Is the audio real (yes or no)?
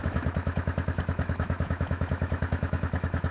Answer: no